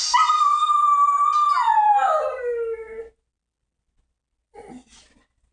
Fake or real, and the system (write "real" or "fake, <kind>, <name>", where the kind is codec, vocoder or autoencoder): real